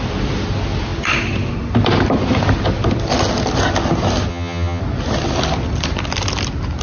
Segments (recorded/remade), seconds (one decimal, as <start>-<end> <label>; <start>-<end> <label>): 0.0-4.3 recorded; 4.3-4.8 remade; 4.8-6.8 recorded